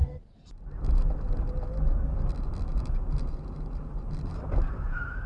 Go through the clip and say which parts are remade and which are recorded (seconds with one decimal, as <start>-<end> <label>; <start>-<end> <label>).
0.0-0.6 remade; 0.6-2.7 recorded; 2.7-5.3 remade